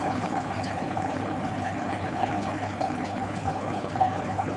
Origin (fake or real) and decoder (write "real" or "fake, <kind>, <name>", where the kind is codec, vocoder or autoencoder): fake, codec, HILCodec